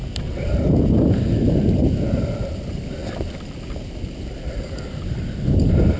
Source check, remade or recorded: recorded